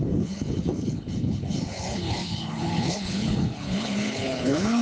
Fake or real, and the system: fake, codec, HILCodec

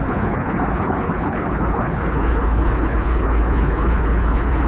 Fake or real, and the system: fake, codec, HILCodec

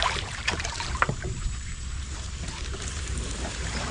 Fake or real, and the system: fake, vocoder, BigVGAN v2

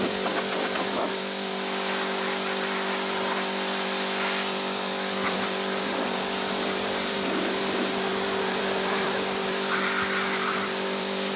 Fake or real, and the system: fake, vocoder, BigVGAN v2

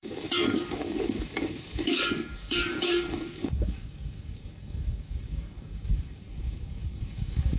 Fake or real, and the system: fake, codec, DAC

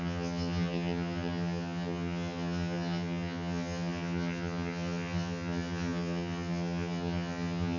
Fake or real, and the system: fake, vocoder, HiFi-GAN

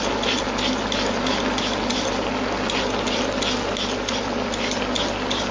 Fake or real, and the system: real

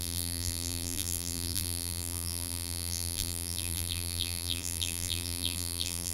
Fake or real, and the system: fake, vocoder, BigVGAN v2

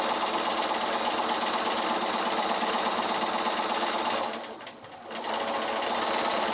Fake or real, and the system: real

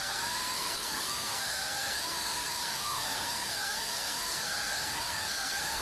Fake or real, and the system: fake, codec, SNAC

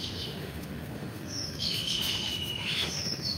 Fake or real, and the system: fake, autoencoder, DAC-VAE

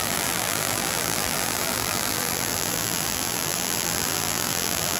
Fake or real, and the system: fake, vocoder, BigVGAN v2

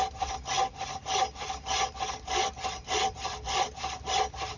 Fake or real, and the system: real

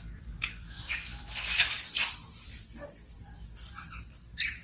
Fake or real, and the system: fake, vocoder, BigVGAN v2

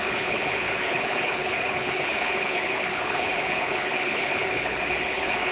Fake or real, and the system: fake, codec, HILCodec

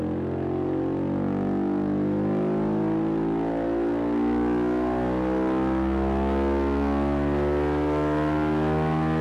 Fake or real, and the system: real